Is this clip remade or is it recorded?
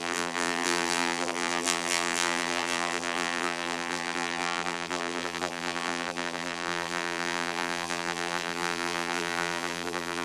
remade